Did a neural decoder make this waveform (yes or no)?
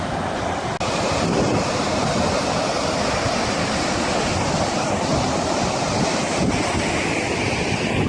no